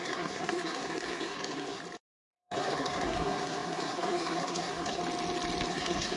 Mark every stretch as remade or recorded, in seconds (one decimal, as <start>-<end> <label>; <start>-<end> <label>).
0.0-1.8 remade; 1.8-2.3 recorded; 2.3-5.0 remade; 5.0-5.7 recorded; 5.7-6.2 remade